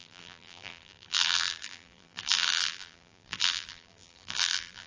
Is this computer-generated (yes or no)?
yes